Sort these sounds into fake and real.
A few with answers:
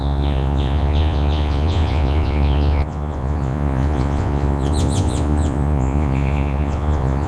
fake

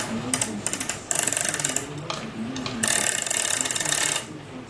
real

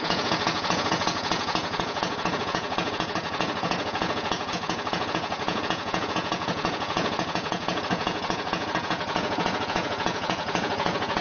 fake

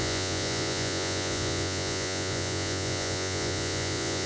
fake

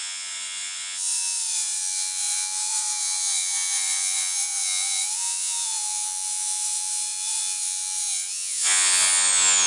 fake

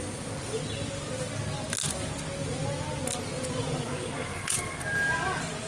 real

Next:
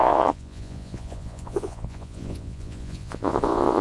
fake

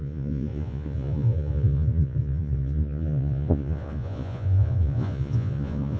fake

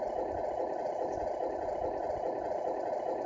real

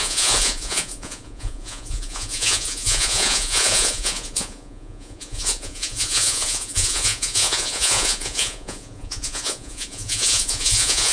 fake